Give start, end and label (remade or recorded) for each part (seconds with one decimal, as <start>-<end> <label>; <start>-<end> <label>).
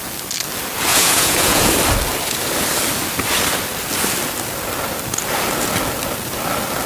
0.0-0.9 recorded; 0.9-1.7 remade; 1.7-6.9 recorded